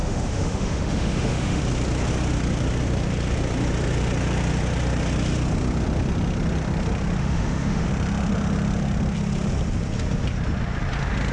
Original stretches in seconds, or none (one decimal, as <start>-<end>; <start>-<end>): 1.6-7.2; 7.9-11.3